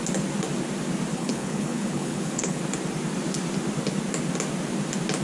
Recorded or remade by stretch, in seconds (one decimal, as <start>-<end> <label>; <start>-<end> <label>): 0.0-1.1 recorded; 1.1-2.6 remade; 2.6-5.2 recorded